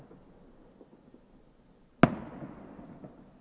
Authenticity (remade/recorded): recorded